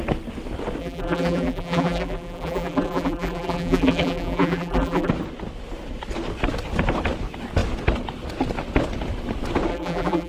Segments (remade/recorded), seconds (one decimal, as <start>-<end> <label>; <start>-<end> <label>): 0.0-0.8 recorded; 0.8-5.1 remade; 5.1-9.7 recorded; 9.7-10.3 remade